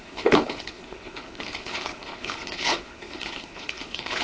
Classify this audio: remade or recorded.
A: remade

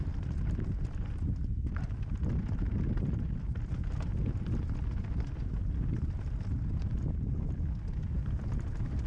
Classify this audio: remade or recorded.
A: recorded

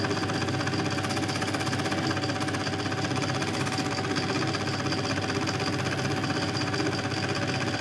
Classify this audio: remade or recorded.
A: recorded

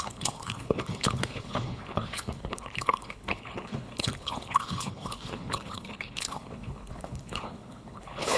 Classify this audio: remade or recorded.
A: remade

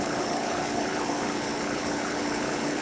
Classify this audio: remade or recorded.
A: remade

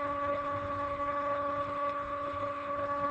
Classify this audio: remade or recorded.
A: remade